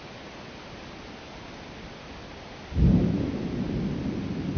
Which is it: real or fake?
real